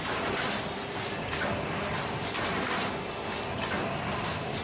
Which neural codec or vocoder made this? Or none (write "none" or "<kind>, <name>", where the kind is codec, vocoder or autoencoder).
none